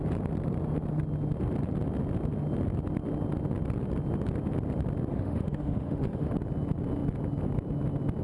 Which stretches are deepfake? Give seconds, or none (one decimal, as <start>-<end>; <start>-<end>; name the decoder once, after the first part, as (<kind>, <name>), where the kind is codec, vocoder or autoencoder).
5.1-6.3 (autoencoder, DAC-VAE)

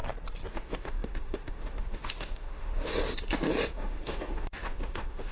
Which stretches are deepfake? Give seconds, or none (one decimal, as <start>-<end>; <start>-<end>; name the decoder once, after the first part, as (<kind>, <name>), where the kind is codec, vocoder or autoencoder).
0.5-2.9 (autoencoder, DAC-VAE); 3.7-5.3